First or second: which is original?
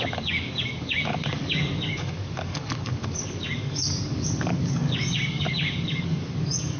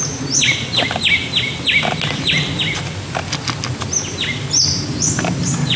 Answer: second